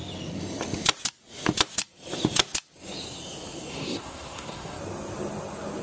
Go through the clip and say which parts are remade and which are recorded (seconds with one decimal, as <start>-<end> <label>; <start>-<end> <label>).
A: 0.0-3.7 recorded; 3.7-4.8 remade; 4.8-5.8 recorded